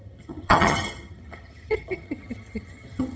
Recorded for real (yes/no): no